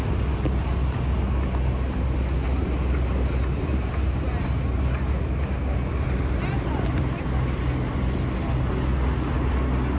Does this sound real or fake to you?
real